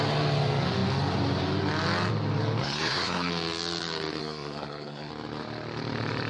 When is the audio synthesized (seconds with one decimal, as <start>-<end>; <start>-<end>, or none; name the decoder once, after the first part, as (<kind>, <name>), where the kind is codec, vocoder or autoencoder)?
2.6-3.3 (codec, SNAC); 4.2-5.1